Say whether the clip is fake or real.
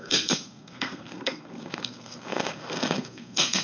fake